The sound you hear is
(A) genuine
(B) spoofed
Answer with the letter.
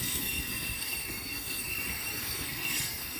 B